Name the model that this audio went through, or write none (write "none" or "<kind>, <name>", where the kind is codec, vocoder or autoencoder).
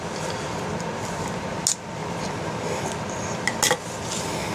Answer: none